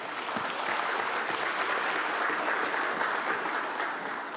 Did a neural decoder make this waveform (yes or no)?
no